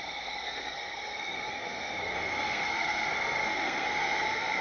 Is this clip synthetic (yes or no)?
yes